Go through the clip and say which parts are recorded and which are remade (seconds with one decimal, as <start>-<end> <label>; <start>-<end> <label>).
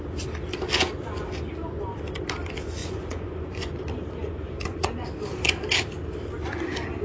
0.0-2.8 recorded; 2.8-3.8 remade; 3.8-4.2 recorded; 4.2-4.9 remade; 4.9-7.0 recorded